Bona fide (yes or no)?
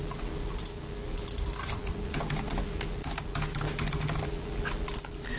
yes